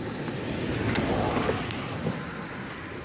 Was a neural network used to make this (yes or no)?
no